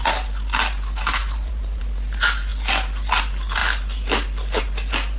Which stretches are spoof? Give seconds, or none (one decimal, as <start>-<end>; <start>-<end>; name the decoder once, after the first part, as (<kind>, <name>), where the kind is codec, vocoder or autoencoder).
1.2-1.8 (vocoder, BigVGAN v2)